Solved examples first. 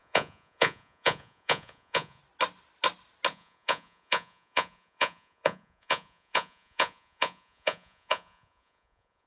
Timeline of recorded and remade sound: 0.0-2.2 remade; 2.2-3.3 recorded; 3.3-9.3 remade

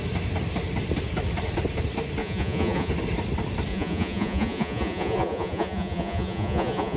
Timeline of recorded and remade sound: 0.0-2.2 recorded; 2.2-2.9 remade; 2.9-3.7 recorded; 3.7-7.0 remade

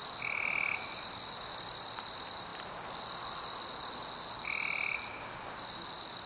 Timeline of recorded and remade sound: 0.0-6.3 recorded

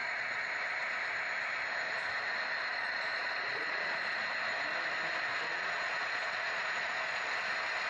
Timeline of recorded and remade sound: 0.0-0.5 remade; 0.5-2.7 recorded; 2.7-4.3 remade; 4.3-5.4 recorded; 5.4-7.3 remade; 7.3-7.9 recorded

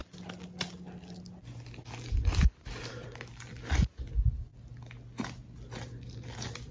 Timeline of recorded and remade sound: 0.0-6.7 recorded

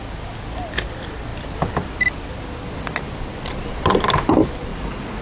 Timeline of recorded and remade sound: 0.0-4.7 recorded; 4.7-5.2 remade

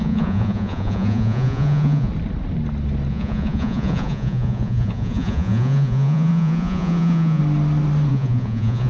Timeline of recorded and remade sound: 0.0-2.1 remade; 2.1-3.1 recorded; 3.1-7.4 remade; 7.4-8.1 recorded; 8.1-8.9 remade

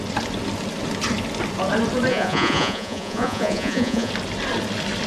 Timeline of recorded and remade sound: 0.0-2.1 recorded; 2.1-4.1 remade; 4.1-5.1 recorded